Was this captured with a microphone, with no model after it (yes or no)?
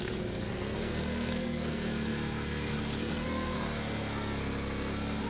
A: no